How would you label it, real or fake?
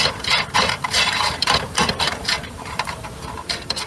fake